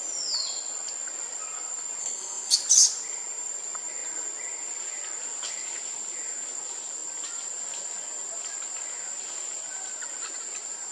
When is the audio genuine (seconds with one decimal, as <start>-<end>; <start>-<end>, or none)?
0.0-2.0; 2.5-10.9